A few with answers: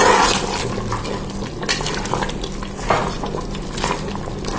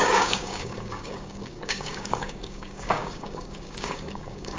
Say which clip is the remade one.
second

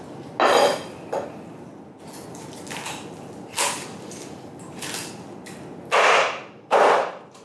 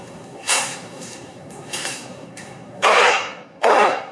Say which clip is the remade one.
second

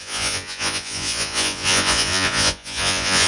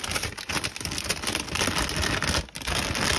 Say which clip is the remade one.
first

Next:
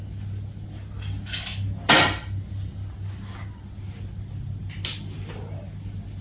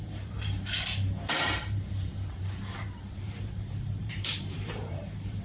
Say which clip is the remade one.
second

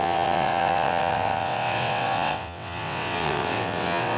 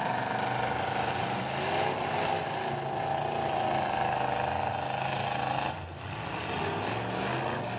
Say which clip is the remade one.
first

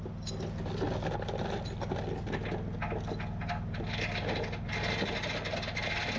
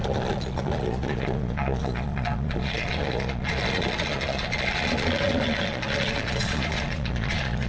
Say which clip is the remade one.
second